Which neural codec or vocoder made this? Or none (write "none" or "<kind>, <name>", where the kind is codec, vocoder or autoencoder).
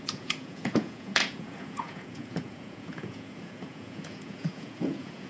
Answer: vocoder, Vocos